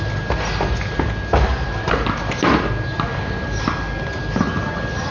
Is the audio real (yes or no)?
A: yes